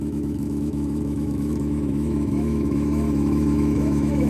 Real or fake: fake